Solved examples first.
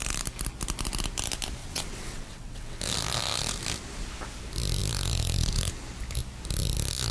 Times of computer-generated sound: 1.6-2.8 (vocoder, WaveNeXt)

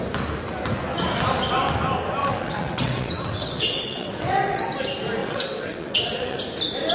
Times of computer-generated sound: 2.2-4.7 (vocoder, WaveNeXt); 5.2-6.4

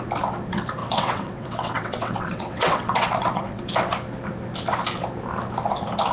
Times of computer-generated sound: 0.8-3.6 (vocoder, WaveNeXt)

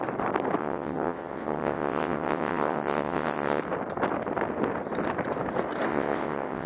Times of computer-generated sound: 0.6-3.6 (vocoder, WaveNeXt); 5.9-6.7

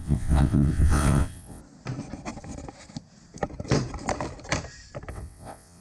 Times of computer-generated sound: 0.0-1.6 (vocoder, WaveNeXt); 5.1-5.8

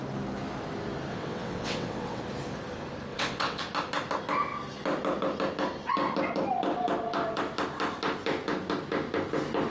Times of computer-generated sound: 1.1-2.2 (vocoder, WaveNeXt); 3.1-3.6

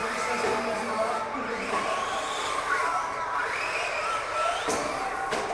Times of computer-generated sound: none

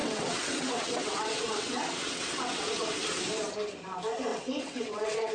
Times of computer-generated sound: 0.0-3.2 (vocoder, WaveNeXt); 4.3-5.3